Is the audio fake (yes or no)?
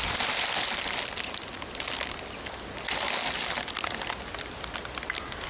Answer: no